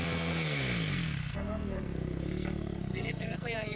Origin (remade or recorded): remade